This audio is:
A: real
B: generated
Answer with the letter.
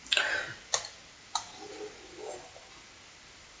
A